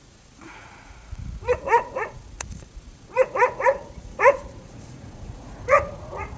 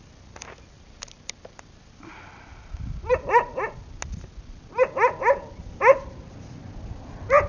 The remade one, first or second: first